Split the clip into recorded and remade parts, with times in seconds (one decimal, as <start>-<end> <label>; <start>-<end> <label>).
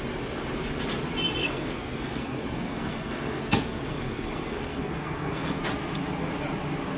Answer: 0.0-1.4 recorded; 1.4-5.6 remade; 5.6-7.0 recorded